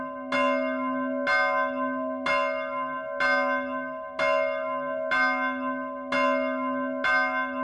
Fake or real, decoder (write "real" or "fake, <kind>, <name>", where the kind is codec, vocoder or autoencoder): real